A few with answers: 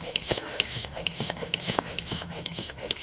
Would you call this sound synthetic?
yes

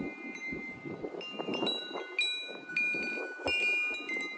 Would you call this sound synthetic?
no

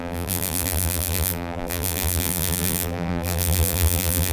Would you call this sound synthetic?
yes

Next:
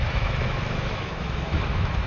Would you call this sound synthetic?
yes